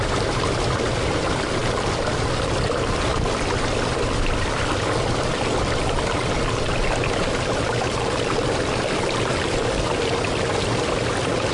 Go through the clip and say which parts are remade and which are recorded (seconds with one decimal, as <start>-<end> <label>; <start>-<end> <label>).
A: 0.0-11.5 recorded